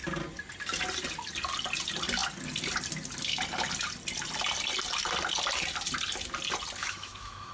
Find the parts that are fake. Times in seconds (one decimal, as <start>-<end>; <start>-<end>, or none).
6.8-7.5